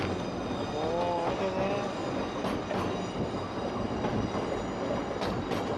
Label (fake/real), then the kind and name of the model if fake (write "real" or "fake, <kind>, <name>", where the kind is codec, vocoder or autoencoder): real